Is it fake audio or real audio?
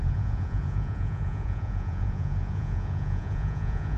fake